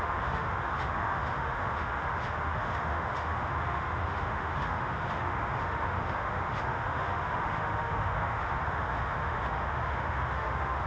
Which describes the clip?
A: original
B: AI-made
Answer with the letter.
B